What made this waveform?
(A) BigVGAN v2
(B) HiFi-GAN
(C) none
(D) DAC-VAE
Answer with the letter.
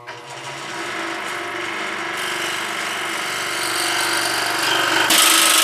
C